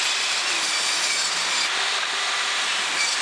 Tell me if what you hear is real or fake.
real